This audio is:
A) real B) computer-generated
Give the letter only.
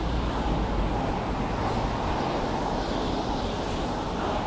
A